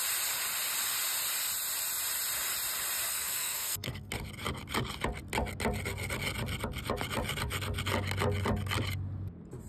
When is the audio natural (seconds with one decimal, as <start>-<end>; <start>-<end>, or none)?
0.0-3.1; 4.1-9.7